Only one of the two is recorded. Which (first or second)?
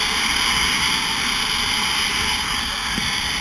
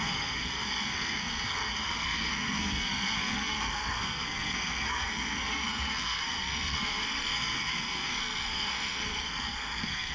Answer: first